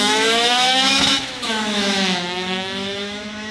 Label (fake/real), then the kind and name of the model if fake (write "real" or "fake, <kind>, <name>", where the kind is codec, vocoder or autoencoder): fake, autoencoder, DAC-VAE